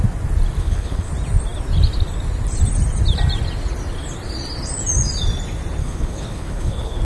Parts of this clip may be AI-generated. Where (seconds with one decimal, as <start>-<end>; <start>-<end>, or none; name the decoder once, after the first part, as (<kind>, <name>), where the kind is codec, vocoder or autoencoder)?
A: 0.6-1.1 (codec, HILCodec); 5.8-7.0